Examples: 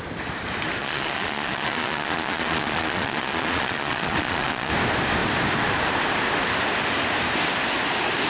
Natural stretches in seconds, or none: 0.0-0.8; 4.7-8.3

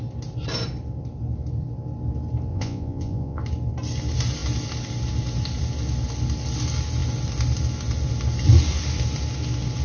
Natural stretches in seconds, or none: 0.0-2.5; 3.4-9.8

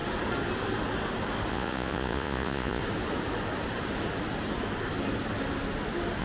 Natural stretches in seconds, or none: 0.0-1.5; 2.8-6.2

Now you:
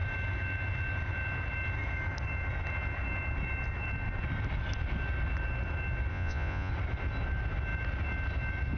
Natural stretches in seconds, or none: 0.0-6.1; 6.7-8.8